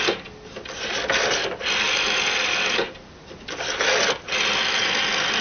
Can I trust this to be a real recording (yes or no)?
yes